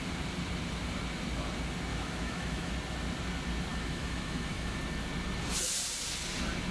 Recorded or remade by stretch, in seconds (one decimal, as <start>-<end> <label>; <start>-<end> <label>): 0.0-1.9 recorded; 1.9-2.7 remade; 2.7-3.7 recorded; 3.7-4.8 remade; 4.8-6.7 recorded

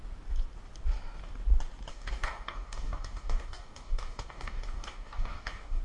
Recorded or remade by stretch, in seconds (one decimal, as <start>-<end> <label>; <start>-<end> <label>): 0.0-1.9 recorded; 1.9-5.8 remade